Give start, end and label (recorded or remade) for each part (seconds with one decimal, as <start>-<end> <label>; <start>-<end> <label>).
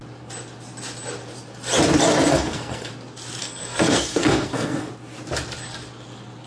0.0-2.3 recorded; 2.3-2.9 remade; 2.9-3.4 recorded; 3.4-4.9 remade; 4.9-6.5 recorded